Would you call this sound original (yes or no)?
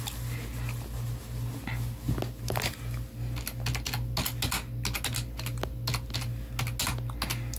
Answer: yes